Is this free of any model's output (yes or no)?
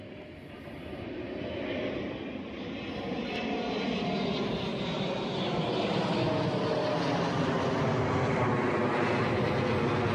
yes